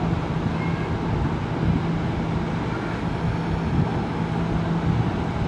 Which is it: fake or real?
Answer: real